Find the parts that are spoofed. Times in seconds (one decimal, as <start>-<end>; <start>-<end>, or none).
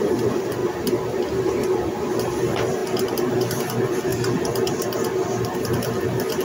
0.0-0.6; 2.2-2.8; 3.3-6.4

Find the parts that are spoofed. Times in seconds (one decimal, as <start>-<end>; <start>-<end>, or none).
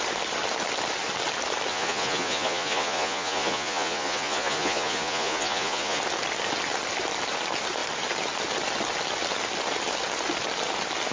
1.7-6.0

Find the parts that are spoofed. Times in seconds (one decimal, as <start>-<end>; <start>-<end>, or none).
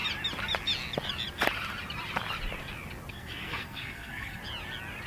3.1-4.4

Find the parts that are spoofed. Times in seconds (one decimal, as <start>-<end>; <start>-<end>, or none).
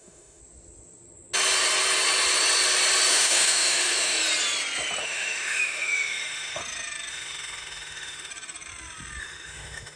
0.0-0.4; 3.1-4.2; 5.0-6.6; 7.1-8.3; 9.2-10.0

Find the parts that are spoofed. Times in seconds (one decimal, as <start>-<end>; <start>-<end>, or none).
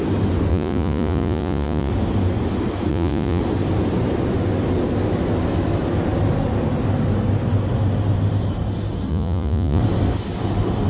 0.5-1.9; 2.9-3.4; 9.1-9.8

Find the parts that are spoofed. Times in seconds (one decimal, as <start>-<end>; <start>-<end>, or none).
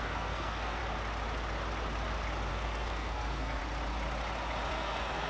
0.0-0.8; 2.5-3.6; 4.7-5.3